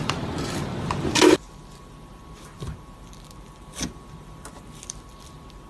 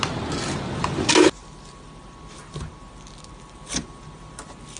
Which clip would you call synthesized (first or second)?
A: first